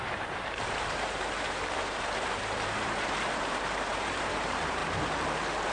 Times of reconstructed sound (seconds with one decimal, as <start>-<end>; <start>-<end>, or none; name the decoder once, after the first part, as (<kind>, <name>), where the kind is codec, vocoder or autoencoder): 0.0-4.8 (vocoder, BigVGAN v2)